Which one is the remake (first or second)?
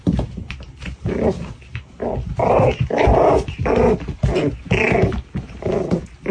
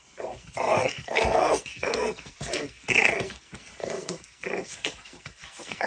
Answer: second